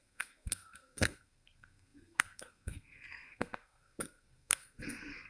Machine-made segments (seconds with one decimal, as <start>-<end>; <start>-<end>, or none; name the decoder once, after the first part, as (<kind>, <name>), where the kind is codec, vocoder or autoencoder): 0.0-5.3 (codec, SNAC)